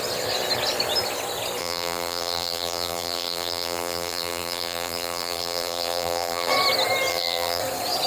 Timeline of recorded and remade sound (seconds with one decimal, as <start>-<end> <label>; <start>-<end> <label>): 0.0-1.6 recorded; 1.6-6.5 remade; 6.5-7.1 recorded; 7.1-7.6 remade; 7.6-8.1 recorded